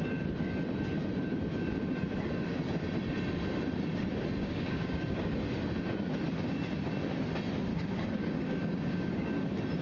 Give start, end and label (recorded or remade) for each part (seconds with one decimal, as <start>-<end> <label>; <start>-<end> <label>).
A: 0.0-4.4 recorded; 4.4-5.2 remade; 5.2-7.7 recorded; 7.7-9.3 remade; 9.3-9.8 recorded